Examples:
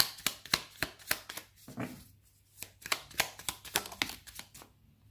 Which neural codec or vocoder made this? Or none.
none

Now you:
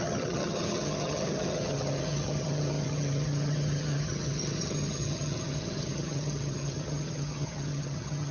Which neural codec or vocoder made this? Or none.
vocoder, HiFi-GAN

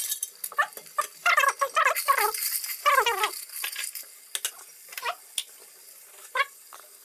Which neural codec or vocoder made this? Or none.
none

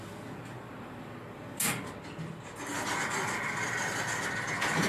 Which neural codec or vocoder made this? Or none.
none